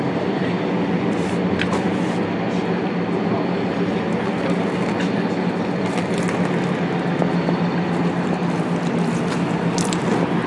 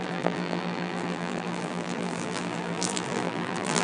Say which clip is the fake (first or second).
second